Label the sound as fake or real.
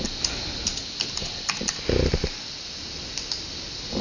real